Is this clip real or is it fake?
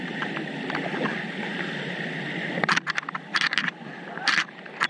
real